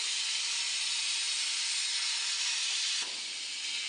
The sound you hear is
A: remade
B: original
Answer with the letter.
B